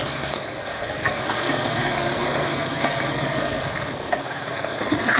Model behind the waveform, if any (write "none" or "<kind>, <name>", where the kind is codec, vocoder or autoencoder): codec, SNAC